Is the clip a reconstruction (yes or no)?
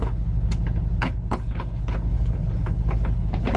yes